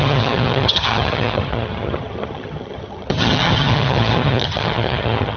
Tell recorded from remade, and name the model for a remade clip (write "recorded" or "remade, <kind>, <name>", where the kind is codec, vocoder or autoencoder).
remade, vocoder, HiFi-GAN